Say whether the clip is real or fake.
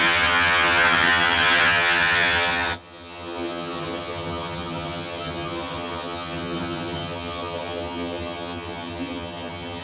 fake